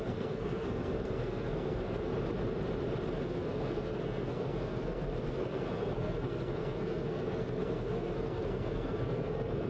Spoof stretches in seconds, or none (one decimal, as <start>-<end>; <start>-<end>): 0.0-2.1; 3.2-9.7